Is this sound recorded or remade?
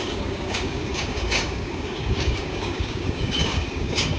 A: remade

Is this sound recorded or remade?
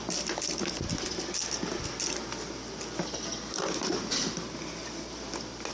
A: recorded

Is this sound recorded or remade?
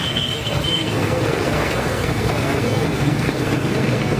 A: remade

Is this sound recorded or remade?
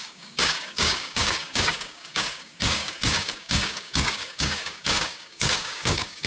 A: remade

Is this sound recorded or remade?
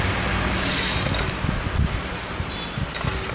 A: recorded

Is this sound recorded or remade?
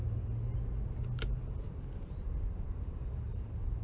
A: recorded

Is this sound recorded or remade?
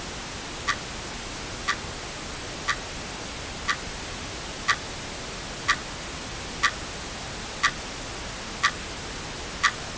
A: recorded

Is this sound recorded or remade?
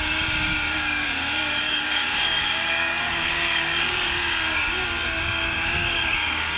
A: remade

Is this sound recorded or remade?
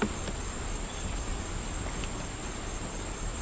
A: recorded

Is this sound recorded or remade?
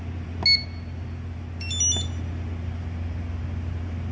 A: recorded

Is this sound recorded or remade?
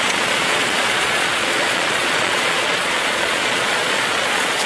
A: remade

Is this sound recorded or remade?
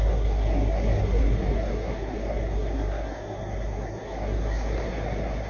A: remade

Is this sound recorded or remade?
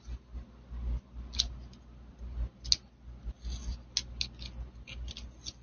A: recorded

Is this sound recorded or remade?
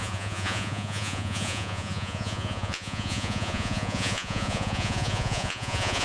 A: remade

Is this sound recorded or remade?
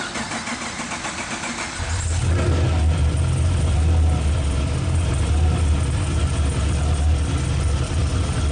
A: recorded